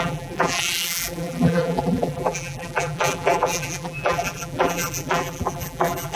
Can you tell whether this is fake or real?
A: fake